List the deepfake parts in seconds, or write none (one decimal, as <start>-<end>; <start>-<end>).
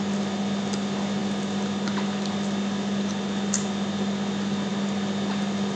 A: none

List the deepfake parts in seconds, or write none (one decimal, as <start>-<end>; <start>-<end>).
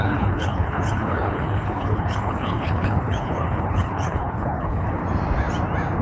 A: 0.0-5.0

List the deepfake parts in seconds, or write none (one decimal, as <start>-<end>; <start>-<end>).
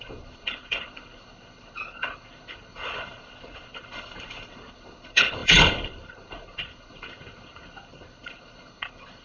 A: 0.0-9.2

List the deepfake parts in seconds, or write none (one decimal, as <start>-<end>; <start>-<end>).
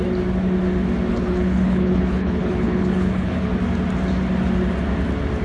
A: 1.1-3.5